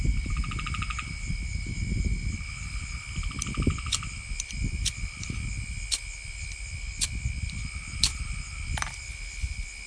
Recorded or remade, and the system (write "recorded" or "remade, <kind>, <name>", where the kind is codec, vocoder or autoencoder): recorded